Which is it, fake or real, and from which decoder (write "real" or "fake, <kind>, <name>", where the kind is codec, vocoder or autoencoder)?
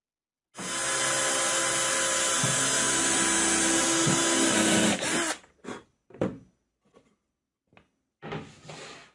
real